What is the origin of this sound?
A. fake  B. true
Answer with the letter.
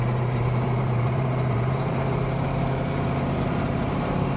A